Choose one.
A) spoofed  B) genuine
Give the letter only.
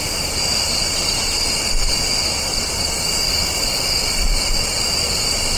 B